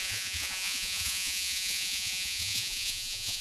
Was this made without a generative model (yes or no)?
no